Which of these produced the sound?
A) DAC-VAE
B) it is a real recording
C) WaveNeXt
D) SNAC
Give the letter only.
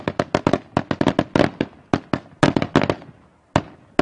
B